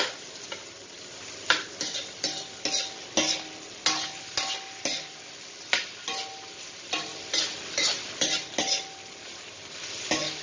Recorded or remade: recorded